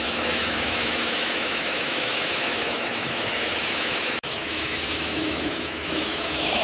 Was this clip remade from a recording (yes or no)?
yes